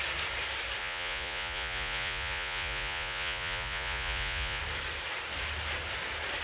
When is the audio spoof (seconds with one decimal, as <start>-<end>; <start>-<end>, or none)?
0.8-4.6